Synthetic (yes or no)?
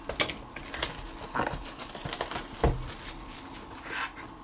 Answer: no